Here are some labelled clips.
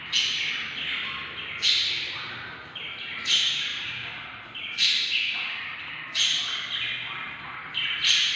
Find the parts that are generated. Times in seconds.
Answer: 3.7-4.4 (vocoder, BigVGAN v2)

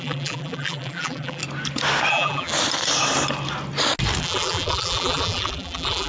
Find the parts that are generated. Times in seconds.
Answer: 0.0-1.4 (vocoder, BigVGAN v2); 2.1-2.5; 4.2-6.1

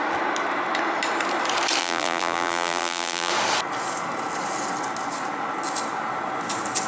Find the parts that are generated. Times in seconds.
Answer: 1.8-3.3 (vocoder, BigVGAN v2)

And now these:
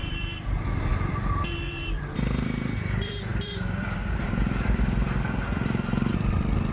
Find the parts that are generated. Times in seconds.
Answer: 0.0-6.7 (vocoder, BigVGAN v2)

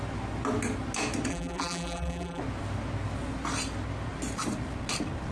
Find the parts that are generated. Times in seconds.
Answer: 1.3-2.4 (vocoder, BigVGAN v2)

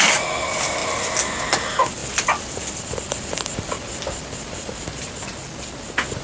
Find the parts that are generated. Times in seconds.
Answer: 2.0-5.1 (vocoder, BigVGAN v2)